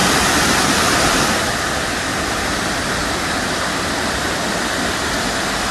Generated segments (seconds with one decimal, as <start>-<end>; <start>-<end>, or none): none